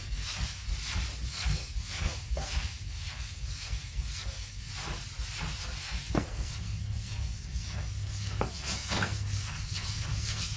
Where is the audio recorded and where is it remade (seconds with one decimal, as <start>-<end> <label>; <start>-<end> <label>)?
0.0-0.7 remade; 0.7-1.3 recorded; 1.3-4.7 remade; 4.7-5.8 recorded; 5.8-10.6 remade